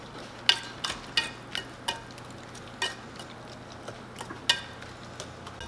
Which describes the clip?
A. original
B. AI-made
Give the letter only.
A